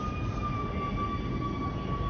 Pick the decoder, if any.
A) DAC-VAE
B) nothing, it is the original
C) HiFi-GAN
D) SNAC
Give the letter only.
B